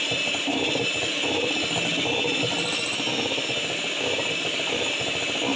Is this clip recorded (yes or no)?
yes